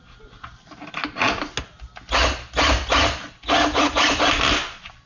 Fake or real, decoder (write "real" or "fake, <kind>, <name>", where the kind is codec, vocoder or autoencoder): real